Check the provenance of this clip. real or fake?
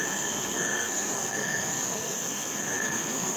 fake